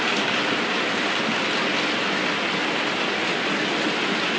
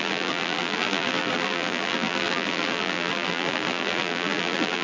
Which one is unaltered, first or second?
first